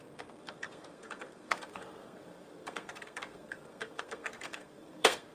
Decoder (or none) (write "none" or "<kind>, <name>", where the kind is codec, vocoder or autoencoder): codec, SNAC